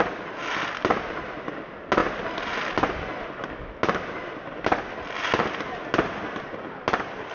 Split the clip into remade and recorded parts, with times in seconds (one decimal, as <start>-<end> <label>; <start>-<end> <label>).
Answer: 0.0-7.3 recorded